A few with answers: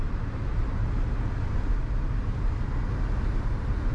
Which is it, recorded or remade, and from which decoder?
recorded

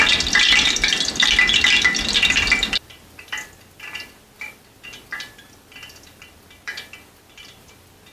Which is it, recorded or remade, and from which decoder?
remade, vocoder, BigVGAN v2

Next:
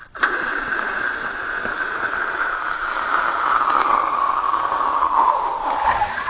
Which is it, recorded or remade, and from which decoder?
remade, vocoder, BigVGAN v2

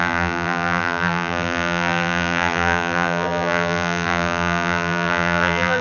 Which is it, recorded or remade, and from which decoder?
remade, vocoder, BigVGAN v2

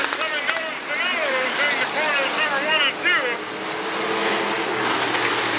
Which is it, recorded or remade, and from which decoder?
recorded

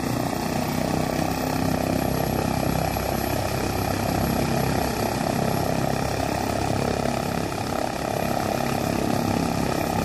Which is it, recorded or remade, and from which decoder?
recorded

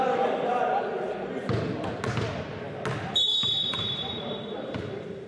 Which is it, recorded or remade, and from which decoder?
recorded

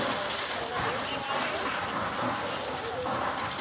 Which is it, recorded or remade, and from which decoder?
recorded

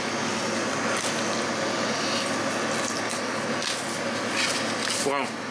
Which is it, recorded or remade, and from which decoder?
recorded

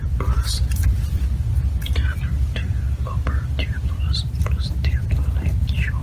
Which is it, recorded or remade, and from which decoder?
remade, vocoder, BigVGAN v2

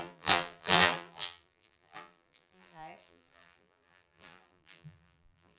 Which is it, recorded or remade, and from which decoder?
remade, vocoder, BigVGAN v2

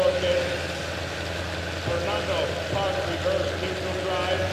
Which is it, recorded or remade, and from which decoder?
recorded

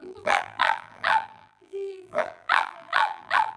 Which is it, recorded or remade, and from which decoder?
remade, vocoder, BigVGAN v2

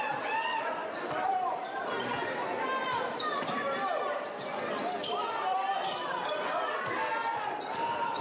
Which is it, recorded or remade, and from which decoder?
remade, vocoder, BigVGAN v2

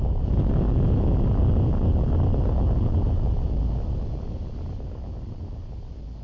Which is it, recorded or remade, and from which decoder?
recorded